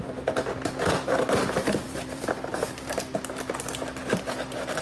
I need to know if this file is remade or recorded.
remade